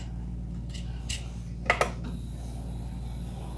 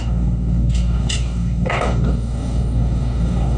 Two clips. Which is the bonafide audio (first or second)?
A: first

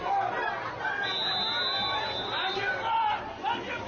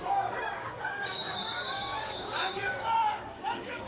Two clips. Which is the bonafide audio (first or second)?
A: first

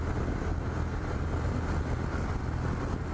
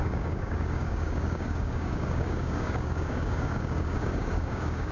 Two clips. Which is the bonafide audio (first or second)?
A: first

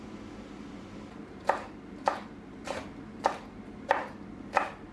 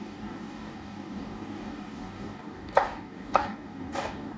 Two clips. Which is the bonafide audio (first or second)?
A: first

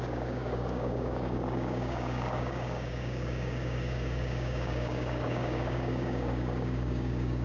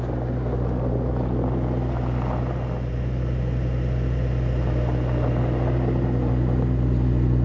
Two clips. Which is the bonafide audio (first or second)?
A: second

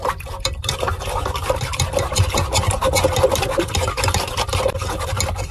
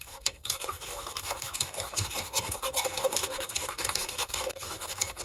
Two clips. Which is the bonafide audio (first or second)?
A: first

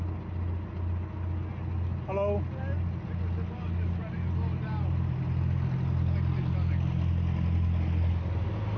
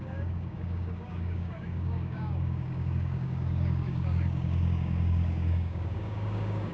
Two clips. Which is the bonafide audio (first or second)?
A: first